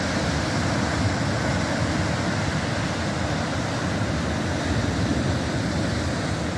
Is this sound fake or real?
real